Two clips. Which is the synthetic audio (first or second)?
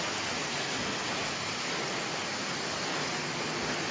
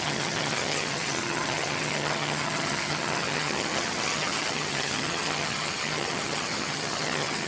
second